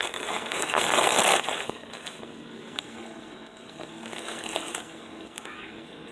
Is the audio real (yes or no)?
no